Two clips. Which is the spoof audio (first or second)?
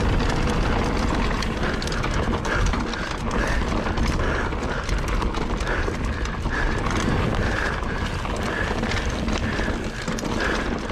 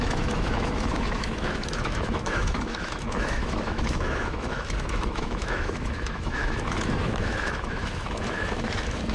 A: second